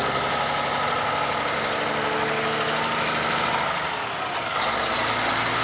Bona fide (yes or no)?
yes